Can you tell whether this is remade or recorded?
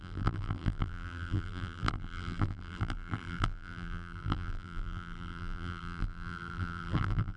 remade